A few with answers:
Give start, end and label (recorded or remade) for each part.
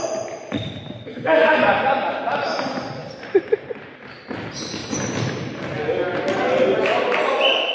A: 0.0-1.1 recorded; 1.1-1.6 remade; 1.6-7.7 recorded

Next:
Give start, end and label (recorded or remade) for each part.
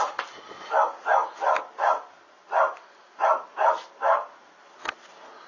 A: 0.0-5.5 recorded